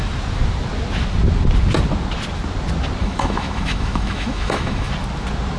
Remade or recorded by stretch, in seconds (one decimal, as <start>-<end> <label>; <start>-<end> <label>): 0.0-3.0 recorded; 3.0-4.9 remade; 4.9-5.6 recorded